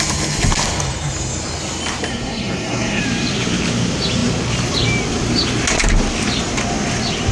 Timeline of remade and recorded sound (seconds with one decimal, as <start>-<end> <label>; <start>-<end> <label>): 0.0-2.1 recorded; 2.1-3.0 remade; 3.0-7.3 recorded